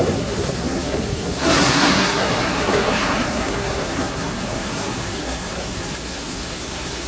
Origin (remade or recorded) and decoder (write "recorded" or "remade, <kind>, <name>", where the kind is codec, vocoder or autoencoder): remade, codec, SNAC